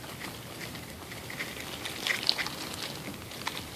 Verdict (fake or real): real